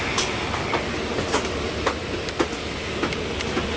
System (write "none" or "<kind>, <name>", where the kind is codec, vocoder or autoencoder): none